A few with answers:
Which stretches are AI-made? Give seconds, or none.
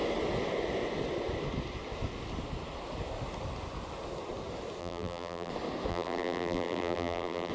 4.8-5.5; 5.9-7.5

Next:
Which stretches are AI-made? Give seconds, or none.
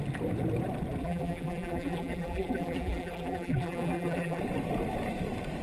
1.0-4.4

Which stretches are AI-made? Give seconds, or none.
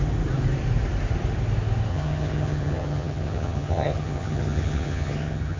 1.9-5.6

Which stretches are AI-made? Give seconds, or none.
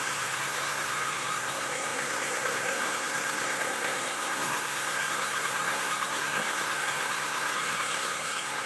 0.0-8.7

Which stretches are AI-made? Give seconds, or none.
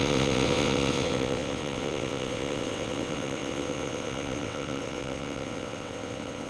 0.0-6.5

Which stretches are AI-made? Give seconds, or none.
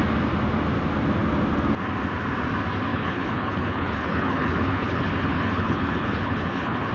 2.9-6.9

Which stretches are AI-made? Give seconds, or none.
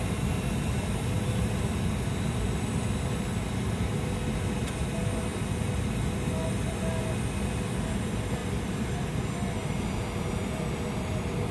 5.3-7.2; 8.4-9.2; 9.6-10.8